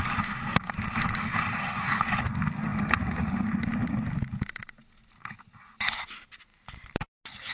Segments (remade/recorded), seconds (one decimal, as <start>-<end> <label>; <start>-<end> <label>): 0.0-7.5 recorded